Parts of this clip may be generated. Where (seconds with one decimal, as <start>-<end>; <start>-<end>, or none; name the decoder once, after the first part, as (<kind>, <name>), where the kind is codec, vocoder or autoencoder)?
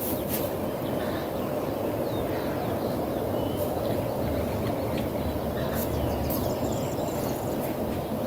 none